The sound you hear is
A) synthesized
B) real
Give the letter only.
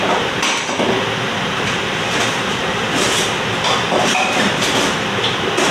A